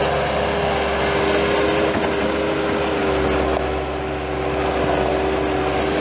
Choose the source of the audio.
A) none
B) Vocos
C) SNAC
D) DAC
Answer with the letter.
A